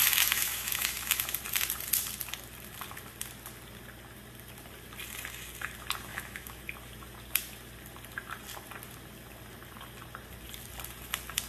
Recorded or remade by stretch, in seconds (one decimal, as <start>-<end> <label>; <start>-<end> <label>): 0.0-1.4 remade; 1.4-6.1 recorded; 6.1-6.6 remade; 6.6-11.5 recorded